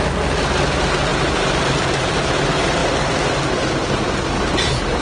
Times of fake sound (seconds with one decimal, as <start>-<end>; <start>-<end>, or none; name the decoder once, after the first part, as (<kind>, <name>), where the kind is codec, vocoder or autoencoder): 1.1-2.4 (vocoder, BigVGAN v2)